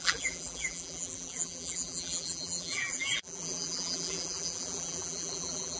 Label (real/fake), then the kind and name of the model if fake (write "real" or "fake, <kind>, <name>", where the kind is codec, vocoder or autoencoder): fake, vocoder, BigVGAN v2